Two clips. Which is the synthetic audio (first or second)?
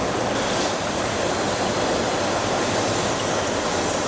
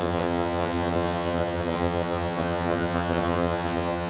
second